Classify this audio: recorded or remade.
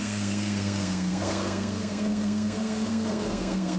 remade